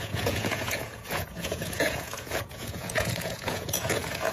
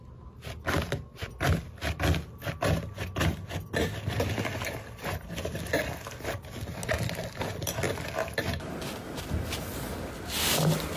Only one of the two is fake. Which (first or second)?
first